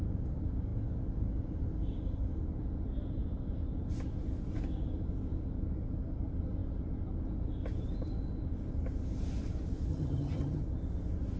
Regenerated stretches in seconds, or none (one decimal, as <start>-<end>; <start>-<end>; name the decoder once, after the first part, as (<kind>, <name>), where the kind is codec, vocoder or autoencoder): 9.9-10.6 (vocoder, HiFi-GAN)